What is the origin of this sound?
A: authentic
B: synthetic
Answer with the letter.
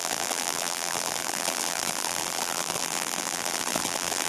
B